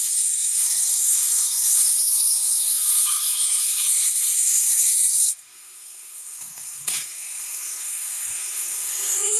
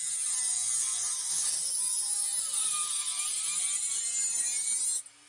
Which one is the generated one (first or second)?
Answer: first